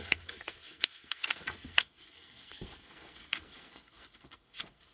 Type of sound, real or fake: fake